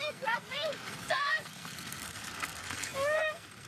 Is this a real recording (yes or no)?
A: no